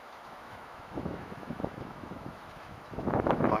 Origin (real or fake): fake